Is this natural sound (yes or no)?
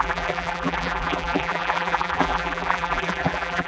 no